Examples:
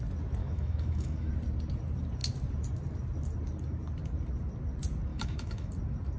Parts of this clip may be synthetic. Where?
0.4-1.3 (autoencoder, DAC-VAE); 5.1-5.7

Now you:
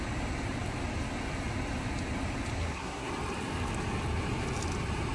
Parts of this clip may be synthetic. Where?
2.6-3.1 (codec, SNAC)

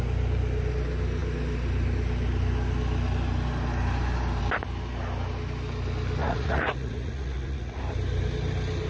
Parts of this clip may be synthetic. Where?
6.2-7.8 (vocoder, Vocos)

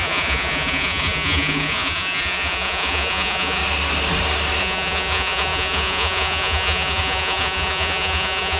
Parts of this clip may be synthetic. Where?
0.0-3.6 (vocoder, Vocos); 4.6-8.6

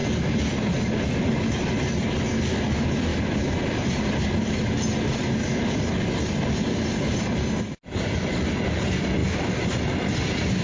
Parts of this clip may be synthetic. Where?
none

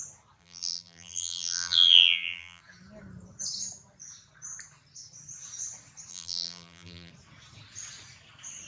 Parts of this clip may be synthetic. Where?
0.4-2.6 (vocoder, BigVGAN v2); 6.1-7.1

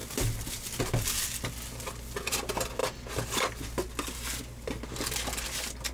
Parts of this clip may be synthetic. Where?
none

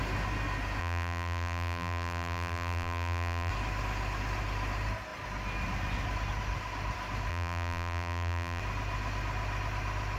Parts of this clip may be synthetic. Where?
0.8-3.5 (vocoder, BigVGAN v2); 7.3-8.6